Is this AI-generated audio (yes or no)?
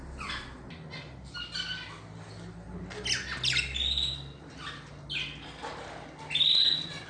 no